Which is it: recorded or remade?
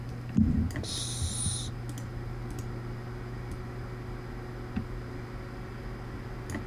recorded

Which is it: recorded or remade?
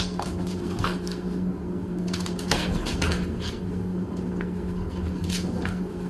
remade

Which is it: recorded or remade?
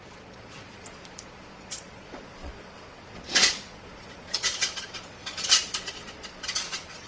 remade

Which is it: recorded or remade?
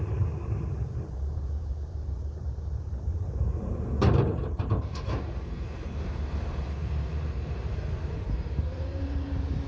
remade